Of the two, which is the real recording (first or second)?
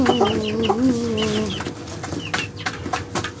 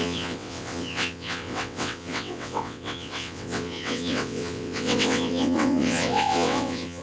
first